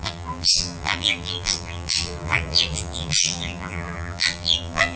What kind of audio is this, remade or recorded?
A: remade